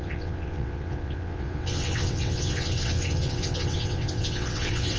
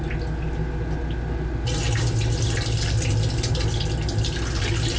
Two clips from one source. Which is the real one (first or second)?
second